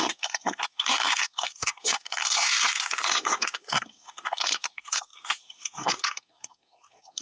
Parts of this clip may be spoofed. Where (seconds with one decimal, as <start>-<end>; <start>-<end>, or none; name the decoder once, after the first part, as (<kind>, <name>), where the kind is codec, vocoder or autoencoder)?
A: 0.0-7.2 (codec, SNAC)

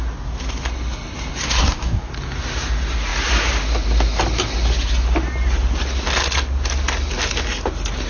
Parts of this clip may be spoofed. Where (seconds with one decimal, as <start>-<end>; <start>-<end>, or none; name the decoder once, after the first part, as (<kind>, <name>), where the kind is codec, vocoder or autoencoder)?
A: 1.4-2.1 (codec, SNAC)

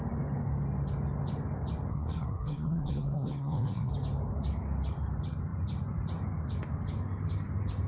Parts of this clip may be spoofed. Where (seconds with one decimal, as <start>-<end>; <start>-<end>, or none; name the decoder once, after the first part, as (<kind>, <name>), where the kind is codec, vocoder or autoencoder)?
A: 1.9-3.9 (codec, SNAC)

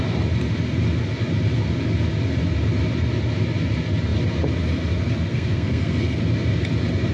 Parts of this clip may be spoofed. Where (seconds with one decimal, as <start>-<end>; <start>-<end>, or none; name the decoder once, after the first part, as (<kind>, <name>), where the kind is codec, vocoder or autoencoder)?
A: 5.3-6.2 (codec, SNAC)

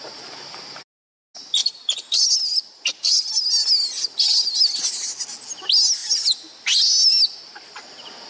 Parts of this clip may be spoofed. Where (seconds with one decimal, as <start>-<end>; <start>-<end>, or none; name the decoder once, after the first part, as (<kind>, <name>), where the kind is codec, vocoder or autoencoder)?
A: none

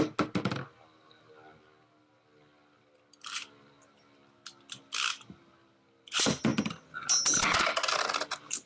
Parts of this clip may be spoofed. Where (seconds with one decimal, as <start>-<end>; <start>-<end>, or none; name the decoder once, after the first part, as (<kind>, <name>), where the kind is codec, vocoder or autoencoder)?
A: none

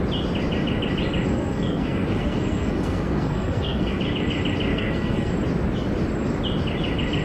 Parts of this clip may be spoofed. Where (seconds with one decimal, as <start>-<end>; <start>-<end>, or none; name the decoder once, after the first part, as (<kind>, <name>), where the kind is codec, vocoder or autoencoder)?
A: 1.3-4.0 (codec, SNAC); 4.7-5.3